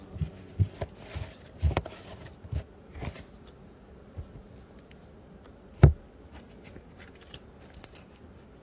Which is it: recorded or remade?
recorded